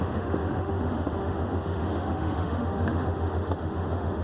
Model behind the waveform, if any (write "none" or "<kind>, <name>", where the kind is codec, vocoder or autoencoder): autoencoder, DAC-VAE